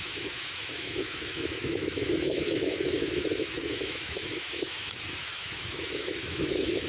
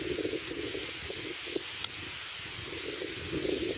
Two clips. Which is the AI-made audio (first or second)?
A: first